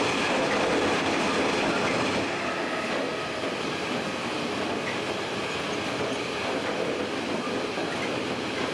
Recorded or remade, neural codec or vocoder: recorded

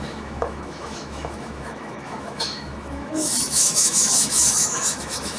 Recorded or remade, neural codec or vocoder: remade, autoencoder, DAC-VAE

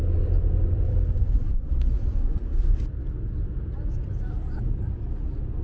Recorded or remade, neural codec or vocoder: recorded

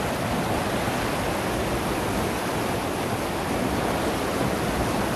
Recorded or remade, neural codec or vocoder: recorded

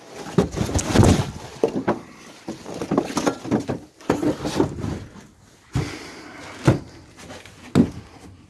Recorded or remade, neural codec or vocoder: recorded